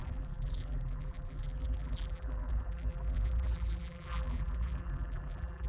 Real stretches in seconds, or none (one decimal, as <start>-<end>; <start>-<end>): none